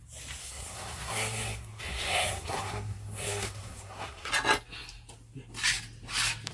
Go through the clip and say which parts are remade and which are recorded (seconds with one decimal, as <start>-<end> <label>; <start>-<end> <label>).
0.0-0.4 recorded; 0.4-4.3 remade; 4.3-6.5 recorded

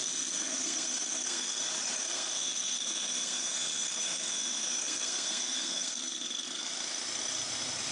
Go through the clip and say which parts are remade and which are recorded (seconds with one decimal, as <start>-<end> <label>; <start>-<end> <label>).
0.0-1.6 remade; 1.6-2.0 recorded; 2.0-6.7 remade; 6.7-7.9 recorded

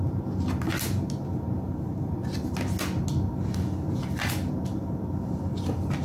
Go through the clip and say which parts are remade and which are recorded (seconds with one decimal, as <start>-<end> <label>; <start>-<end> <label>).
0.0-6.0 recorded

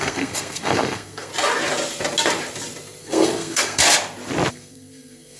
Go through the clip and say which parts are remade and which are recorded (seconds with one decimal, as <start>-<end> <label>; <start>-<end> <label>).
0.0-1.3 remade; 1.3-3.0 recorded; 3.0-3.8 remade; 3.8-4.5 recorded; 4.5-5.4 remade

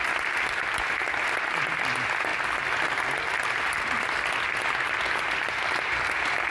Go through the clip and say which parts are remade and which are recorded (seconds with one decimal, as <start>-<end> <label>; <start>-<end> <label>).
0.0-6.5 recorded

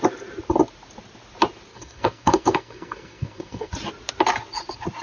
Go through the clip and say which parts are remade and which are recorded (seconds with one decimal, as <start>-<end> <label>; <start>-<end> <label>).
0.0-1.7 recorded; 1.7-3.7 remade; 3.7-5.0 recorded

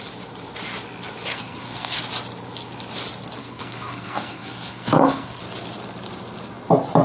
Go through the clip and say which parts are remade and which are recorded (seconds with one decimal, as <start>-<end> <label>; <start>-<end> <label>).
0.0-1.3 recorded; 1.3-2.0 remade; 2.0-3.4 recorded; 3.4-5.4 remade; 5.4-7.0 recorded